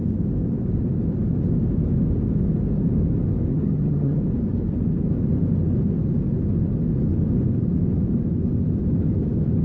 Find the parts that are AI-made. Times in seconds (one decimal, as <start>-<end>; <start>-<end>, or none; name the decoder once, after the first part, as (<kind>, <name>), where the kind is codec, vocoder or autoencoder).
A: 3.5-4.2 (vocoder, HiFi-GAN)